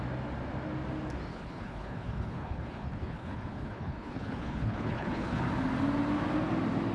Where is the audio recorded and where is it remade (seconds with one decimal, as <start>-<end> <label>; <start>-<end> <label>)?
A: 0.0-1.3 recorded; 1.3-5.4 remade; 5.4-6.9 recorded